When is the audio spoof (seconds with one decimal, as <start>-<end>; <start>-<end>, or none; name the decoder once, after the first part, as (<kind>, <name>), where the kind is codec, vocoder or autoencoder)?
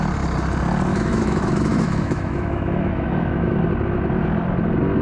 0.9-3.6 (autoencoder, DAC-VAE)